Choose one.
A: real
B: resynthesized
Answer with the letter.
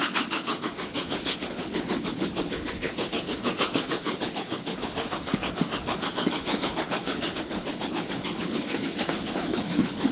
B